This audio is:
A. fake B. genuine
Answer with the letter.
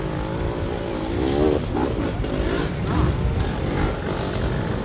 B